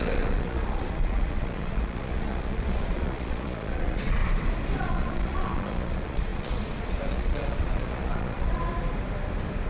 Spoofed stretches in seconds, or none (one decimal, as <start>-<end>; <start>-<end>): 0.0-4.2; 4.8-8.6